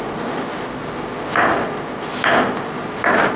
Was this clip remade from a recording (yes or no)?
no